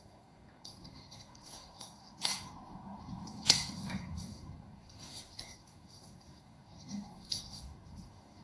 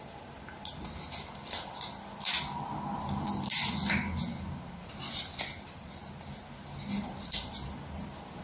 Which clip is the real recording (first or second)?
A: second